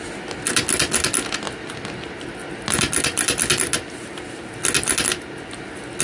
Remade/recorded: recorded